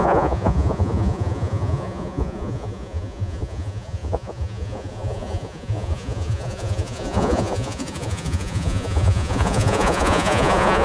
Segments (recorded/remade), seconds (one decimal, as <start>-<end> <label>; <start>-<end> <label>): 0.0-10.8 remade